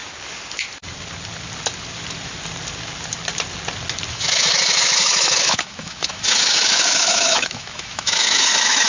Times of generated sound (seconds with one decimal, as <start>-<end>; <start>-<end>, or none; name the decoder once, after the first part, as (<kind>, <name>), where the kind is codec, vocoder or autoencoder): 4.1-8.9 (autoencoder, DAC-VAE)